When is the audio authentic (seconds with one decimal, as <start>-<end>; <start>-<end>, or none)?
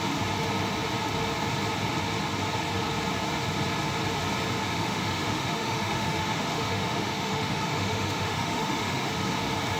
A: 0.0-4.7; 9.1-9.8